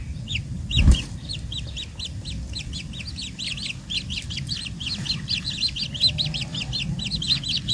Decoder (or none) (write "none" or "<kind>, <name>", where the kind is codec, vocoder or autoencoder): none